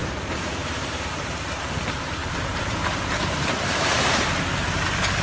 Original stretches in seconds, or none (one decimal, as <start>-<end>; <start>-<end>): 1.3-2.2; 4.3-5.2